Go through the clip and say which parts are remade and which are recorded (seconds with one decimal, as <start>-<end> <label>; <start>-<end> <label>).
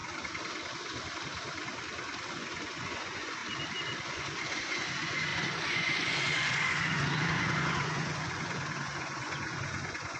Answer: 0.0-2.3 recorded; 2.3-3.4 remade; 3.4-4.0 recorded; 4.0-10.2 remade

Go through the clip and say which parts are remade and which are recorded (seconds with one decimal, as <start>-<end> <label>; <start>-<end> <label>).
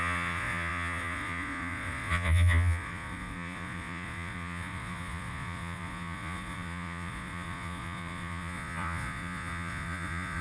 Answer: 0.0-10.4 remade